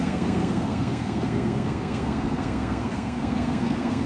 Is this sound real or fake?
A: fake